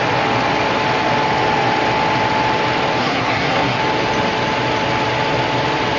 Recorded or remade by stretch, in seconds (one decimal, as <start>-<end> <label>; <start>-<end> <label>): 0.0-3.0 recorded; 3.0-3.8 remade; 3.8-6.0 recorded

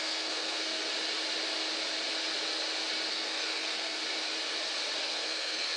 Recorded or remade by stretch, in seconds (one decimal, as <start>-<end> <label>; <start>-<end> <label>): 0.0-0.9 remade; 0.9-3.1 recorded; 3.1-4.0 remade; 4.0-5.0 recorded; 5.0-5.8 remade

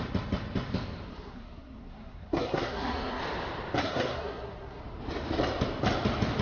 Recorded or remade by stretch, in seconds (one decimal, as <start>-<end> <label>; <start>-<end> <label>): 0.0-1.1 recorded; 1.1-3.2 remade; 3.2-3.8 recorded; 3.8-4.8 remade; 4.8-6.4 recorded

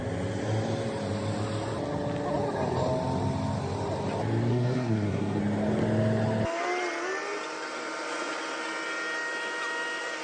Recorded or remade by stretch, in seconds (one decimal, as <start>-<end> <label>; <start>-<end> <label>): 0.0-4.5 recorded; 4.5-5.4 remade; 5.4-10.2 recorded

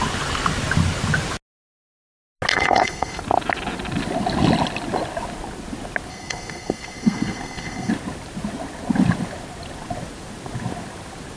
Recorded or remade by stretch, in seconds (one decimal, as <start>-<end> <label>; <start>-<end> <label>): 0.0-2.5 recorded; 2.5-3.2 remade; 3.2-6.1 recorded; 6.1-7.9 remade; 7.9-11.4 recorded